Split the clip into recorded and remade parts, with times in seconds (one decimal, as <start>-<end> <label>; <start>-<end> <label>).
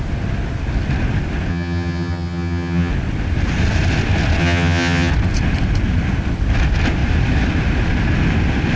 0.0-1.5 recorded; 1.5-2.9 remade; 2.9-4.4 recorded; 4.4-5.1 remade; 5.1-8.8 recorded